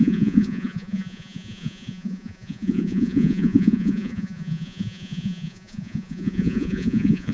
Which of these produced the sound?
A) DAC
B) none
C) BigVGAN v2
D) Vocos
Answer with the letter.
D